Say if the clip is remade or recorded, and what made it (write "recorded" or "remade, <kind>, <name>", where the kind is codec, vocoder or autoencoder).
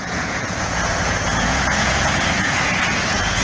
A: remade, vocoder, Vocos